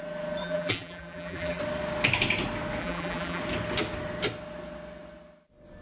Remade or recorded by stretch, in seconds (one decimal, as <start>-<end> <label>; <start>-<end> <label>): 0.0-0.4 recorded; 0.4-1.6 remade; 1.6-2.8 recorded; 2.8-3.4 remade; 3.4-5.8 recorded